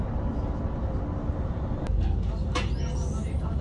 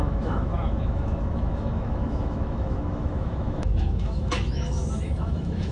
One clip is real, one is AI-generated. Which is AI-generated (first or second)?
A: second